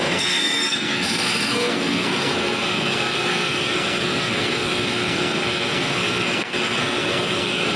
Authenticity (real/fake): fake